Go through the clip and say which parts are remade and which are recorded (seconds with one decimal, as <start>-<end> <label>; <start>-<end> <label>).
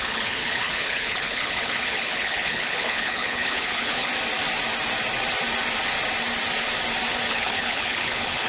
0.0-4.1 remade; 4.1-7.3 recorded; 7.3-8.5 remade